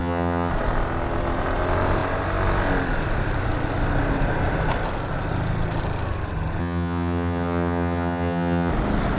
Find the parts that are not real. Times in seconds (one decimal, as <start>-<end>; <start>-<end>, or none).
0.0-0.5; 6.6-8.7